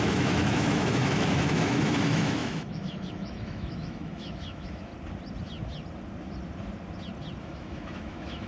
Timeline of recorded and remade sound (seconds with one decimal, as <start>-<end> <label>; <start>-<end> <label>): 0.0-4.9 remade; 4.9-7.4 recorded; 7.4-8.5 remade